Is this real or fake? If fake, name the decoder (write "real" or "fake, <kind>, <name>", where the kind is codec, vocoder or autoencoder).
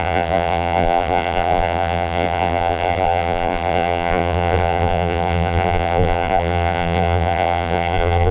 fake, vocoder, BigVGAN v2